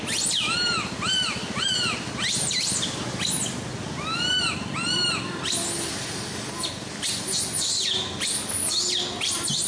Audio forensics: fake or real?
real